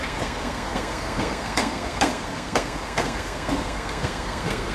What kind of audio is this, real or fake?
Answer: fake